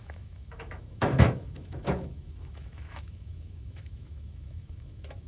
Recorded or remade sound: remade